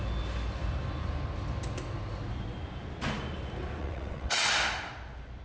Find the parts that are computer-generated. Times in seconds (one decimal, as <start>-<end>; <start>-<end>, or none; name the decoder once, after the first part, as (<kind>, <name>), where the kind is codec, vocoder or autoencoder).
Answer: 3.8-4.5 (vocoder, WaveNeXt)